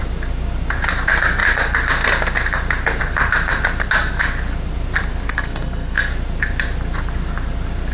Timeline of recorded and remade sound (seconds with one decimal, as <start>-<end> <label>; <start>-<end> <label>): 0.0-5.3 recorded; 5.3-6.1 remade; 6.1-7.9 recorded